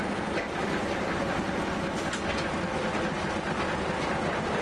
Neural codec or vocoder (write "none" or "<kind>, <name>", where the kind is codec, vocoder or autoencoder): none